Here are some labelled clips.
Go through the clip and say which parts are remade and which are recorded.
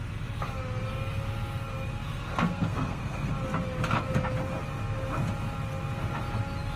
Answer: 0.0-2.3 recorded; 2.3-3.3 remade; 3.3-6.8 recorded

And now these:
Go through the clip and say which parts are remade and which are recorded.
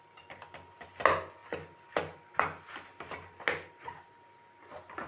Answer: 0.0-5.1 recorded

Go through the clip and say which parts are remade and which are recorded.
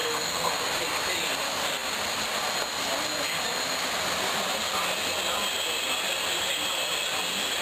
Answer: 0.0-0.5 remade; 0.5-7.6 recorded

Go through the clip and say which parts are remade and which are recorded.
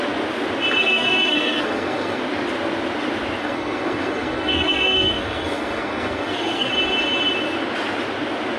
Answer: 0.0-0.8 recorded; 0.8-2.2 remade; 2.2-3.4 recorded; 3.4-6.7 remade; 6.7-8.6 recorded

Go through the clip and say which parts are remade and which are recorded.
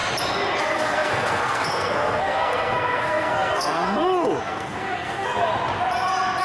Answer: 0.0-0.6 recorded; 0.6-5.5 remade; 5.5-6.4 recorded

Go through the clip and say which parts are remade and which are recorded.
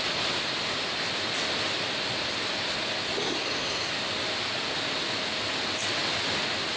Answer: 0.0-3.2 recorded; 3.2-3.9 remade; 3.9-6.8 recorded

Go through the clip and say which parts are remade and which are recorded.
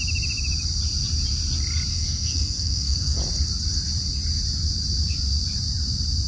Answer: 0.0-1.9 recorded; 1.9-3.2 remade; 3.2-6.3 recorded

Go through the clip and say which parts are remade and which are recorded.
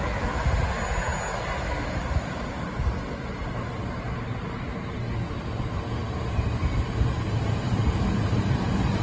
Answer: 0.0-9.0 recorded